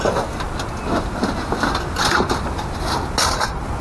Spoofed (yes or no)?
no